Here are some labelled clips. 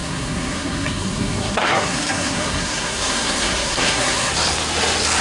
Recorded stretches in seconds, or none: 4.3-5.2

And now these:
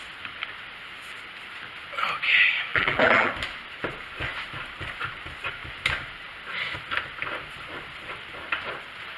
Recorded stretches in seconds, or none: 0.0-2.7; 3.3-9.2

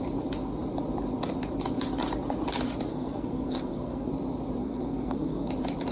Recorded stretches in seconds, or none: 0.0-2.9; 4.1-4.6; 5.5-5.9

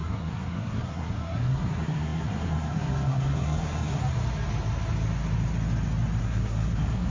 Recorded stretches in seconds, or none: 4.0-6.2

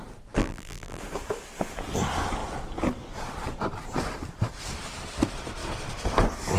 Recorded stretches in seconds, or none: 0.0-0.4; 1.0-6.6

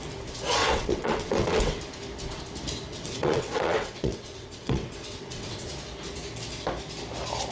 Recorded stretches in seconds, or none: 0.0-0.6; 1.8-2.9; 5.7-7.5